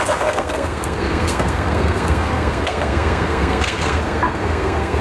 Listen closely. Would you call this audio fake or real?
fake